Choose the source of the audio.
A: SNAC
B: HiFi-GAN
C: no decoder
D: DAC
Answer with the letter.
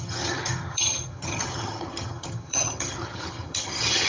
B